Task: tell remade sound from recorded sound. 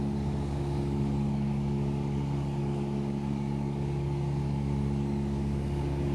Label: remade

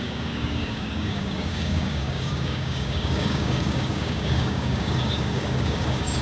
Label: remade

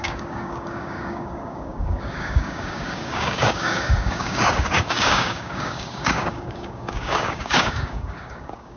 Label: remade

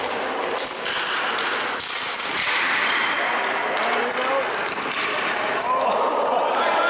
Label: recorded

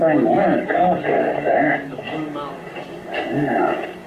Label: remade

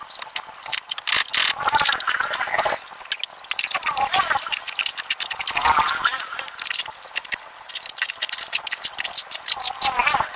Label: recorded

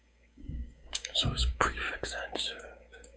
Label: remade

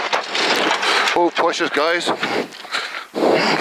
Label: recorded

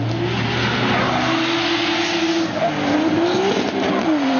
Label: recorded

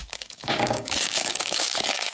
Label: remade